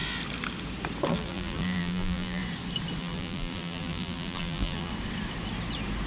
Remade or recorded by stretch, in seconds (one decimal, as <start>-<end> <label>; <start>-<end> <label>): 0.0-1.1 recorded; 1.1-2.4 remade; 2.4-3.0 recorded; 3.0-4.9 remade; 4.9-6.1 recorded

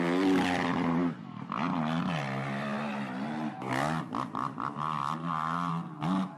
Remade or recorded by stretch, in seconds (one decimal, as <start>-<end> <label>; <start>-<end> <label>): 0.0-6.4 recorded

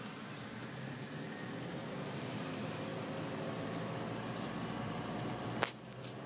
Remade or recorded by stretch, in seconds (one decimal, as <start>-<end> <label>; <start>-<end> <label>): 0.0-2.9 recorded; 2.9-6.3 remade

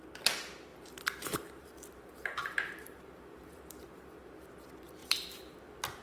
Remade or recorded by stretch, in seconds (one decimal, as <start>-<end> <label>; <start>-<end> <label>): 0.0-0.7 recorded; 0.7-4.3 remade; 4.3-5.0 recorded; 5.0-5.5 remade; 5.5-6.0 recorded